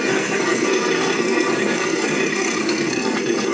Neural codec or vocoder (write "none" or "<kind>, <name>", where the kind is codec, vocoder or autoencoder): codec, SNAC